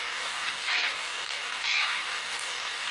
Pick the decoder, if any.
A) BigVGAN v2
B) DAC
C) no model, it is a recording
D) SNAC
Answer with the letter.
B